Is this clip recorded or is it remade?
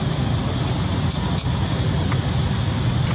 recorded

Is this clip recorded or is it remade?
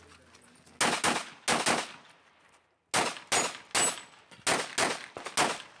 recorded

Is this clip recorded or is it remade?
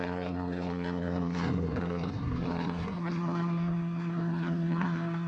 remade